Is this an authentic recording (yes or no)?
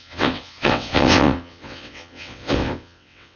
no